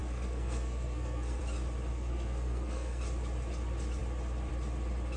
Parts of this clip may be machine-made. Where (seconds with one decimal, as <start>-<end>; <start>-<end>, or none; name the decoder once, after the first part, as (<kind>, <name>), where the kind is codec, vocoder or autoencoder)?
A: 0.0-1.4 (codec, SNAC); 1.9-3.0